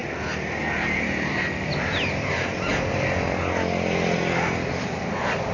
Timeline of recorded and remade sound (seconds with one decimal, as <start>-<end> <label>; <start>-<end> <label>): 0.0-1.3 recorded; 1.3-2.7 remade; 2.7-4.7 recorded; 4.7-5.5 remade